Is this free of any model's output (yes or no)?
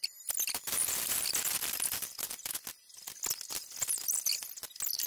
yes